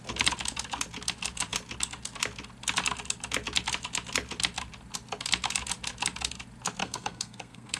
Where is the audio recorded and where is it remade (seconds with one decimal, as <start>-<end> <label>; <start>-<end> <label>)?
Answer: 0.0-6.8 recorded; 6.8-7.8 remade